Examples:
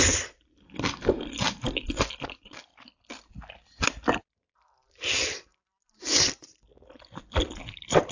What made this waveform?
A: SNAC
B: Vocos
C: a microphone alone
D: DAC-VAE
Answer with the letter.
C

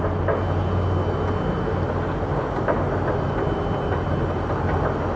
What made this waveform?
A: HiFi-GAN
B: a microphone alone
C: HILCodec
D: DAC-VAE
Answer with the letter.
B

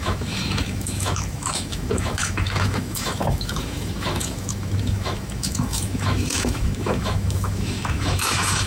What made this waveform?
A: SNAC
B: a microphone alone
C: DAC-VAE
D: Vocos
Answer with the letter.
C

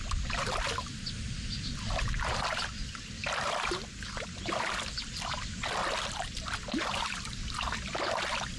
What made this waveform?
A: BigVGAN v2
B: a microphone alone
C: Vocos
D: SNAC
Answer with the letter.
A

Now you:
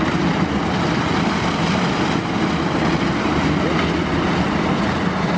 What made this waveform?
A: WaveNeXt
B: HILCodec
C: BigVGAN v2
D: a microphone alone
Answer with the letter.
D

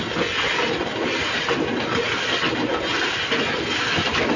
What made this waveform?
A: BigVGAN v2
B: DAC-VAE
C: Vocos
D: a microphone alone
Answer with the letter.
D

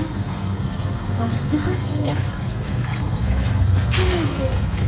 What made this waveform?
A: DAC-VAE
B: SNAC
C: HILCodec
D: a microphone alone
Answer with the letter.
B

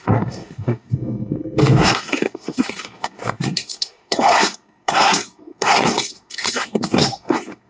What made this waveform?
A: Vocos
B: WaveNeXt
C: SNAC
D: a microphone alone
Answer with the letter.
C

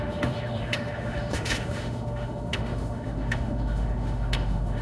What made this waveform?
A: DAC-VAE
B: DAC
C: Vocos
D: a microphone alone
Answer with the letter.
A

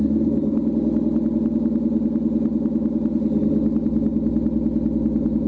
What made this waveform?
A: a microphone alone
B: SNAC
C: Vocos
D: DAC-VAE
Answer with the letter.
A